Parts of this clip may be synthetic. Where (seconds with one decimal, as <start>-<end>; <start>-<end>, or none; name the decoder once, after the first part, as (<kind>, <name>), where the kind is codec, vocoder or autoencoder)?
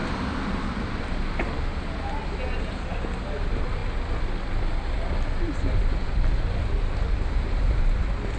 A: none